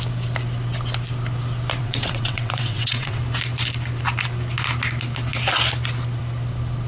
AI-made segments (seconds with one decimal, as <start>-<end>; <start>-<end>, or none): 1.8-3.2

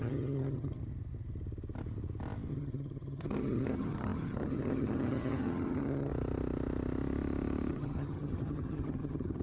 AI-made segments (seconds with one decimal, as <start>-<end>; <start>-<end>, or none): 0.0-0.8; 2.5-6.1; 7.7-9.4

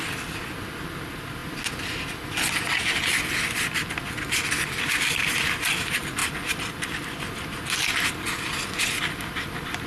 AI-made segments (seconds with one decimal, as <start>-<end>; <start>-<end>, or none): none